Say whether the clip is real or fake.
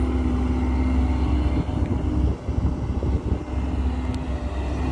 real